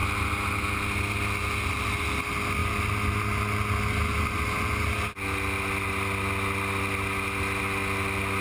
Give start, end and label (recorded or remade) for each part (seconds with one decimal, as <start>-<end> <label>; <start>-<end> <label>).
0.0-8.4 recorded